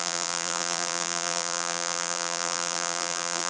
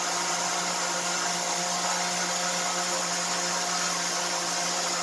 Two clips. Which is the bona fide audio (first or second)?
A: second